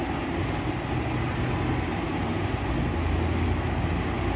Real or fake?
real